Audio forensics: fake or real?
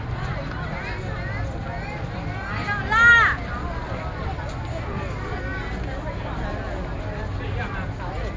real